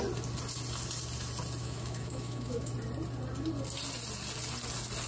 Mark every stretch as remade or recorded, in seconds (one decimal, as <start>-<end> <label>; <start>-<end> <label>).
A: 0.0-1.6 recorded; 1.6-2.7 remade; 2.7-5.1 recorded

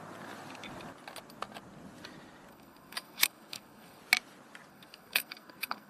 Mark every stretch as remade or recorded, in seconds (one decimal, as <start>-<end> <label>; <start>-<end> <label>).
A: 0.0-2.5 recorded; 2.5-4.0 remade; 4.0-4.7 recorded; 4.7-5.9 remade

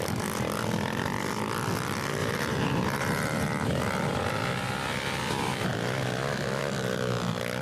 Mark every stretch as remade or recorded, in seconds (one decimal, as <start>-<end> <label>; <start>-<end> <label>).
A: 0.0-2.2 recorded; 2.2-3.7 remade; 3.7-7.6 recorded

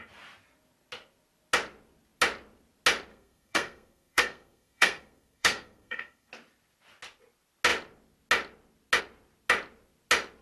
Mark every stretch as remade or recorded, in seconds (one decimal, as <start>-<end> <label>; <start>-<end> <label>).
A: 0.0-3.1 recorded; 3.1-6.3 remade; 6.3-10.4 recorded